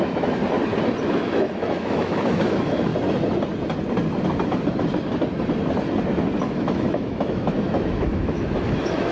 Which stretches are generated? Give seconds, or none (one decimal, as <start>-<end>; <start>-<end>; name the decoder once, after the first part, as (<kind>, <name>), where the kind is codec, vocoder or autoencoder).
0.0-0.4 (autoencoder, DAC-VAE); 1.0-2.9; 6.4-9.1